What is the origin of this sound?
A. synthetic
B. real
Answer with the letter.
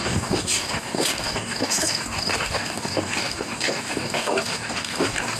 A